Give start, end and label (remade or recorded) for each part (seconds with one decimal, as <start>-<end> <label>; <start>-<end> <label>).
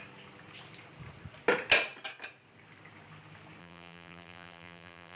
0.0-3.6 recorded; 3.6-5.2 remade